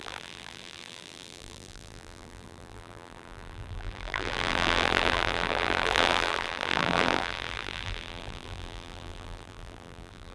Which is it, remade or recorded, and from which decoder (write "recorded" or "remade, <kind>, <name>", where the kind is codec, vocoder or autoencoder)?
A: remade, vocoder, BigVGAN v2